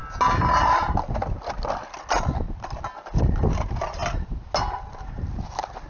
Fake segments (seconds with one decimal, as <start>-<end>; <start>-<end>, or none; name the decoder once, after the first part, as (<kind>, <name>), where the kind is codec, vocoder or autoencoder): none